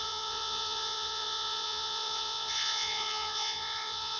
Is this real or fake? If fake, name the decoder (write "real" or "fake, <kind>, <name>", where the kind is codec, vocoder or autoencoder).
fake, vocoder, Vocos